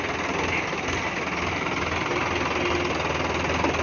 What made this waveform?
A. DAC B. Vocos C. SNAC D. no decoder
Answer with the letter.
D